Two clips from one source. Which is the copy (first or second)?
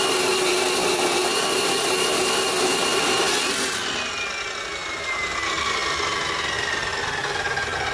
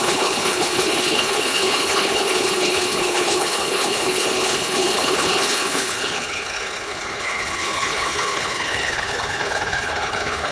second